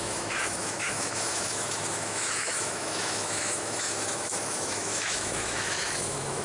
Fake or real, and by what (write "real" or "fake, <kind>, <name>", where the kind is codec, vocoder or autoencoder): fake, autoencoder, DAC-VAE